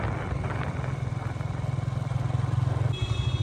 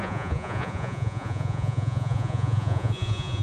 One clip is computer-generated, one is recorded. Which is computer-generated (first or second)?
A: second